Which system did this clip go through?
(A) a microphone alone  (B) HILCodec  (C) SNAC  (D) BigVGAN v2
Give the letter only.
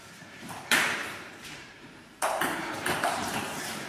D